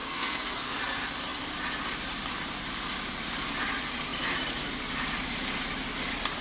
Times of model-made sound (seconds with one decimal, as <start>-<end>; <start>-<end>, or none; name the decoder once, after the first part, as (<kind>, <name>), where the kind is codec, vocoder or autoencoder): 0.0-0.8 (codec, SNAC)